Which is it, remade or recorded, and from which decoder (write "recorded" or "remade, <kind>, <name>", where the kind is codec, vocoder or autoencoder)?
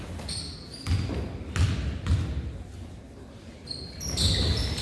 recorded